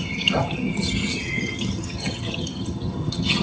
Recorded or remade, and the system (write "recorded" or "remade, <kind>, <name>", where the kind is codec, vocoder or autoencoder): remade, vocoder, HiFi-GAN